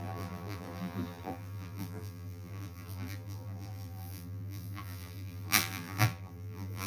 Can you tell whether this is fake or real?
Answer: fake